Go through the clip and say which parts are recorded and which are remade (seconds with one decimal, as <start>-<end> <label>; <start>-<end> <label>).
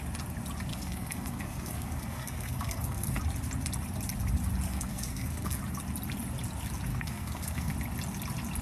0.0-0.7 recorded; 0.7-3.2 remade; 3.2-4.7 recorded; 4.7-5.6 remade; 5.6-6.9 recorded; 6.9-7.7 remade; 7.7-8.6 recorded